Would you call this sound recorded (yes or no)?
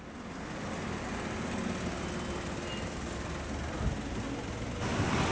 yes